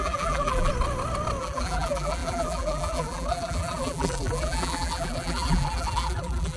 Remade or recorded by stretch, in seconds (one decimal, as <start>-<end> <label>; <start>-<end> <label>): 0.0-0.7 remade; 0.7-1.4 recorded; 1.4-6.6 remade